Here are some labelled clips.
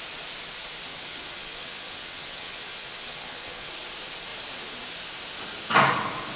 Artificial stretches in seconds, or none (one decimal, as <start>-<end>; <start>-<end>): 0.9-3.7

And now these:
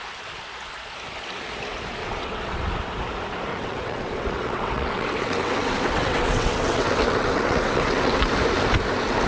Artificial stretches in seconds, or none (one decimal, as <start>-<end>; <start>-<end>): 2.0-2.6; 3.5-8.3

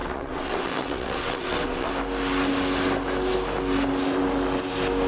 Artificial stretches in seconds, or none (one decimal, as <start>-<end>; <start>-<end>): 0.0-1.9